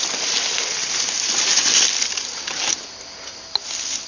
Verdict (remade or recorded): recorded